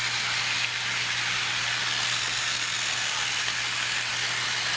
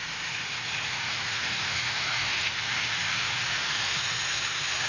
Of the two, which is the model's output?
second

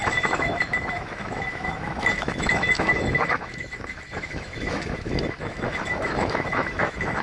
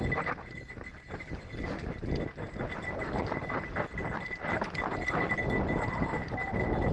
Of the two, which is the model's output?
first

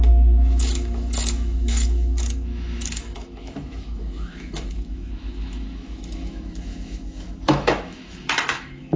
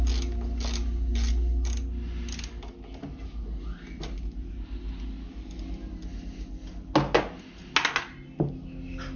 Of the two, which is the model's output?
first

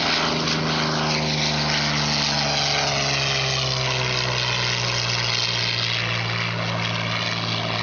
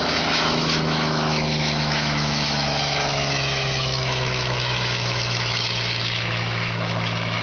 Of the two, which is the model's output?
second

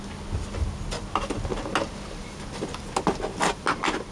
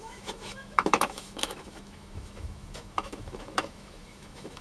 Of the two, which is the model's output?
second